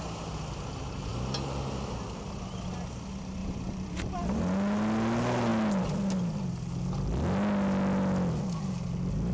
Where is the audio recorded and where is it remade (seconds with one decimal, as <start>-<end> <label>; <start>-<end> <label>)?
0.0-3.4 recorded; 3.4-4.4 remade; 4.4-9.3 recorded